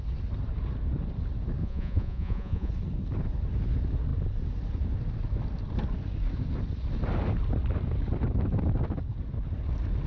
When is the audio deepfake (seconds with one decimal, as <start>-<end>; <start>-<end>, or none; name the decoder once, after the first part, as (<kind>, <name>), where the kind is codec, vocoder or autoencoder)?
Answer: 1.6-2.7 (vocoder, Vocos)